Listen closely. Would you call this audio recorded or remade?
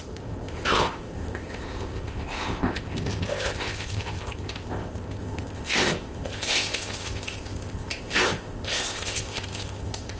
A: remade